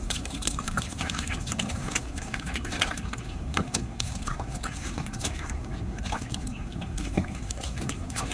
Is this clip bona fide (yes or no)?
no